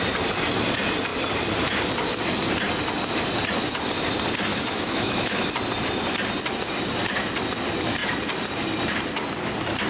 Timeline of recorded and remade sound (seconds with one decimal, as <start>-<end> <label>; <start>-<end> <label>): 0.0-4.5 recorded; 4.5-5.5 remade; 5.5-9.9 recorded